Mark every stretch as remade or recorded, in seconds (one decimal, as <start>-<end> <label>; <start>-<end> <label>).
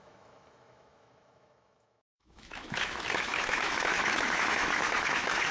0.0-5.5 remade